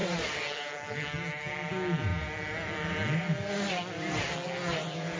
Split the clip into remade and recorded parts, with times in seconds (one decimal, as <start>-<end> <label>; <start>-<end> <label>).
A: 0.0-5.2 recorded

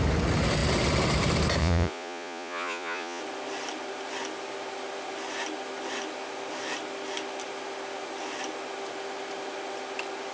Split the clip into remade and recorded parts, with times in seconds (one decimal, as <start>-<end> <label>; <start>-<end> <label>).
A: 0.0-1.6 recorded; 1.6-3.2 remade; 3.2-10.3 recorded

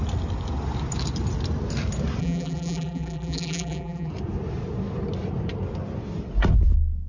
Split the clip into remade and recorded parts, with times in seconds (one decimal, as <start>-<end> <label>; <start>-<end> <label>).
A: 0.0-2.2 recorded; 2.2-4.1 remade; 4.1-7.1 recorded